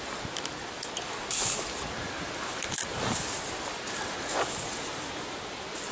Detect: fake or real real